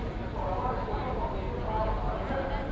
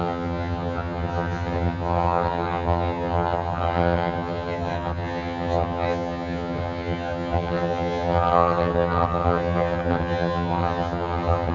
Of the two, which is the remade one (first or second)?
second